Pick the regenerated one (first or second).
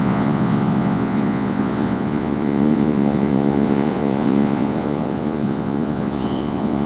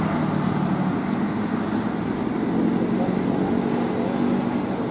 first